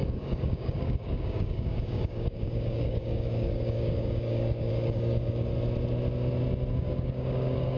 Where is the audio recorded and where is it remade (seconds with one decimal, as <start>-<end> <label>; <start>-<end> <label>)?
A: 0.0-5.5 remade; 5.5-6.7 recorded; 6.7-7.8 remade